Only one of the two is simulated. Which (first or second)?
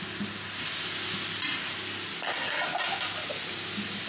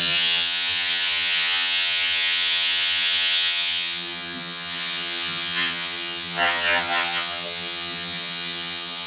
second